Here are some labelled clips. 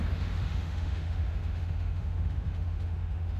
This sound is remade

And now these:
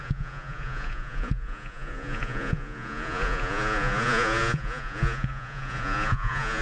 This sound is remade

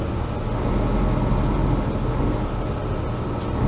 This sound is recorded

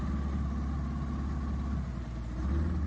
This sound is recorded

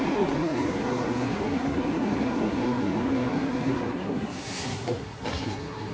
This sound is remade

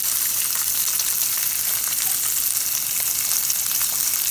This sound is recorded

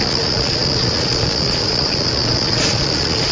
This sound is remade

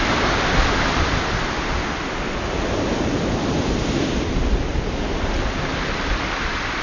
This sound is recorded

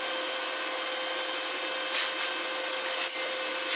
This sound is recorded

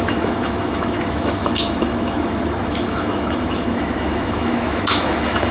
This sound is remade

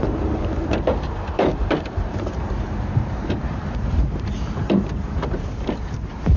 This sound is remade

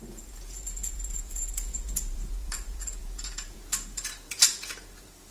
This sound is remade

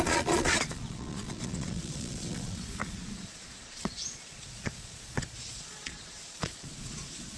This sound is remade